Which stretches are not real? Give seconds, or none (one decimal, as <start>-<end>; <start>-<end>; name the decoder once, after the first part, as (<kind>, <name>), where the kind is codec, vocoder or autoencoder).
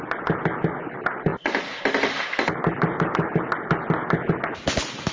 none